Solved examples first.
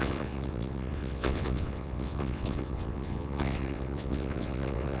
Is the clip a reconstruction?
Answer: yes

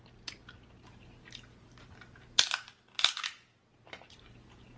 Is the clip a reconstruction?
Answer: no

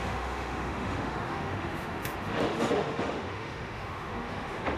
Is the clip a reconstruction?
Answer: yes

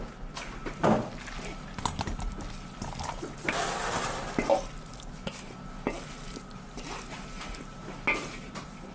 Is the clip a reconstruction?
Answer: no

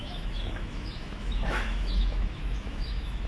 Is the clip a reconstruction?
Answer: yes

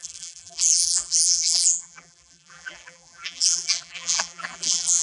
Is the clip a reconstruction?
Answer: yes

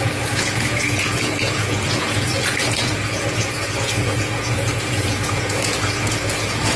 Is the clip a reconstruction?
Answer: yes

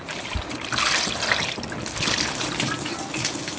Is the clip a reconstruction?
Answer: no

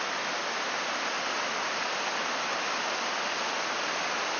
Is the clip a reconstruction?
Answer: no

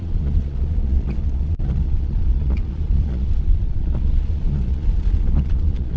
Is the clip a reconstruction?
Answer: yes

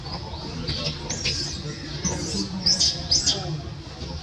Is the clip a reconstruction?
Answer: no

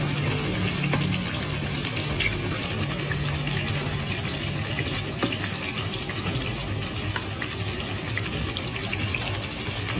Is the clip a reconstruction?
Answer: no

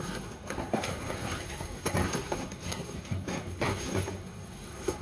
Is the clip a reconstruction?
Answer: yes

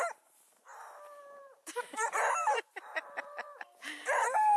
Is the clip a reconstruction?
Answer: yes